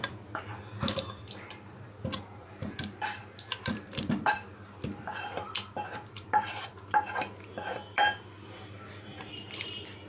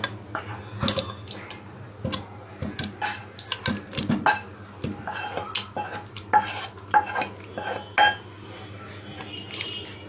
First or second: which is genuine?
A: second